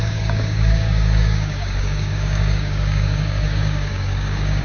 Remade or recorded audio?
remade